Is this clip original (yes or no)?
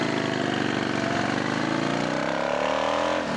yes